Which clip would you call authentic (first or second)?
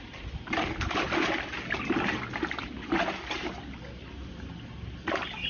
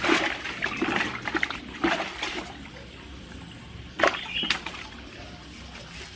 first